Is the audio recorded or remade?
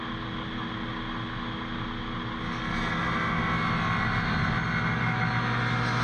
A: recorded